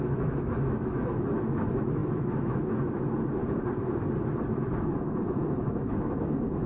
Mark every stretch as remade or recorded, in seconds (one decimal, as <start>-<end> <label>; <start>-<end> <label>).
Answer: 0.0-3.4 remade; 3.4-4.8 recorded; 4.8-6.7 remade